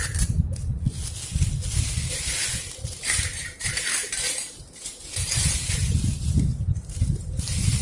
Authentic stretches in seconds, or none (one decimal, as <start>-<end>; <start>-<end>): 0.7-2.5